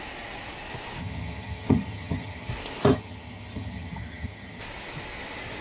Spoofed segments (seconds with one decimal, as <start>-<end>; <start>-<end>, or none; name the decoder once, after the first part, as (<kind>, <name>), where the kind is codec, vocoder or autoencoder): 1.0-2.5 (vocoder, HiFi-GAN); 2.9-4.6